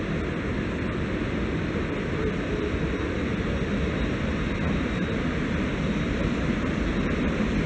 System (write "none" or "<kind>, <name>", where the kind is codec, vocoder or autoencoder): none